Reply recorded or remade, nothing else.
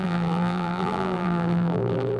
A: remade